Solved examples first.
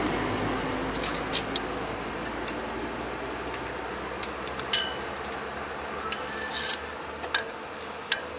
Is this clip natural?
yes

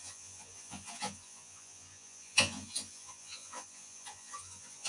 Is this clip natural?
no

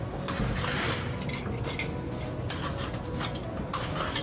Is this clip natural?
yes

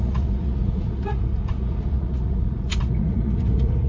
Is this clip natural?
no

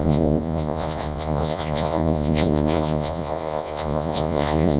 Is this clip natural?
no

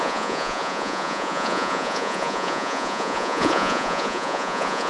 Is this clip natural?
no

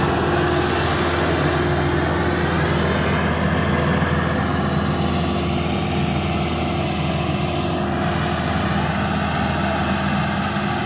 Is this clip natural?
yes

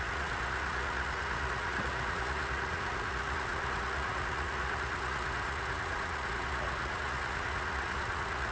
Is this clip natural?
no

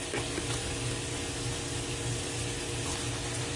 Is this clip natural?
yes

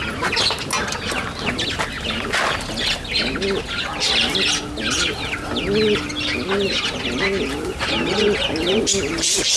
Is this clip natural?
yes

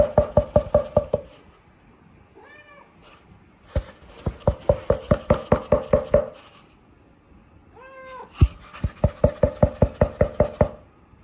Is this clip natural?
yes